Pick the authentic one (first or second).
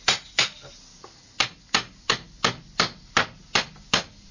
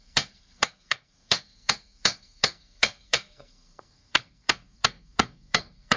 first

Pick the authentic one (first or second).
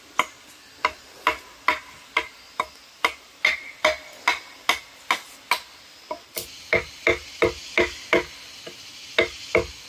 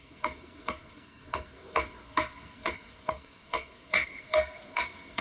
first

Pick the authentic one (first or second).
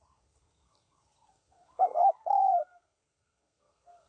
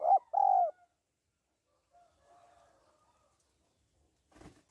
second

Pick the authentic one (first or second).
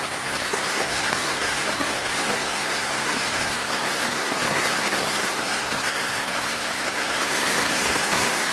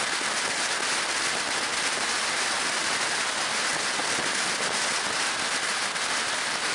second